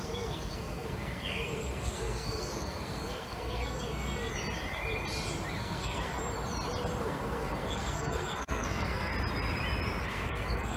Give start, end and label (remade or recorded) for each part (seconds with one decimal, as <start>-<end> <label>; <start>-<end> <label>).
0.0-4.3 remade; 4.3-5.6 recorded; 5.6-6.2 remade; 6.2-7.0 recorded; 7.0-9.1 remade; 9.1-10.0 recorded; 10.0-10.8 remade